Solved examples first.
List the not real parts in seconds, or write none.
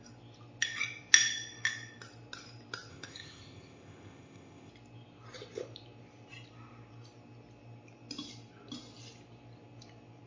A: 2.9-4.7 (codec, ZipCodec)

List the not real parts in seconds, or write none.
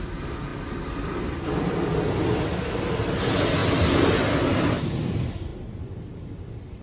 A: none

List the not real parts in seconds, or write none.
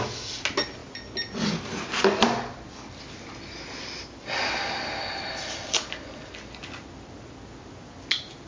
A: none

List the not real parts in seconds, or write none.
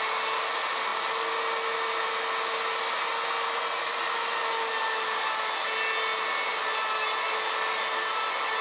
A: none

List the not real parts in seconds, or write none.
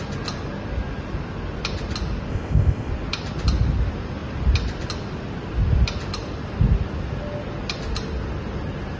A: 2.3-2.9 (codec, ZipCodec)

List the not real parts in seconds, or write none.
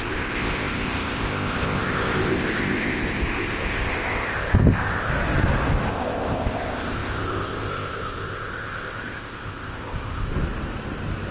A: 0.0-5.1 (codec, ZipCodec); 5.9-10.3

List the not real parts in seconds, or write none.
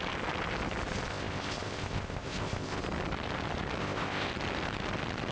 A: 1.1-2.8 (codec, ZipCodec); 3.8-4.3